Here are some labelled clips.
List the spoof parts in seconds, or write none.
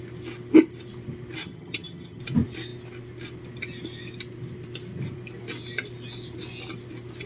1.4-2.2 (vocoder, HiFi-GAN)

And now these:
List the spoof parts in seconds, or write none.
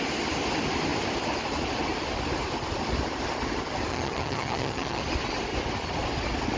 3.9-5.0 (vocoder, HiFi-GAN)